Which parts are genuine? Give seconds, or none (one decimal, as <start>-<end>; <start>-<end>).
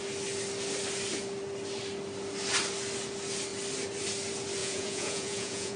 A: 0.0-4.6